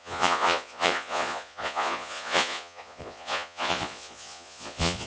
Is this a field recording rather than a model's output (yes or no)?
no